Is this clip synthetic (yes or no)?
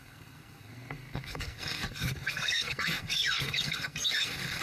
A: yes